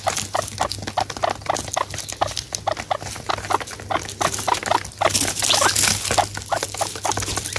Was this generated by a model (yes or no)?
no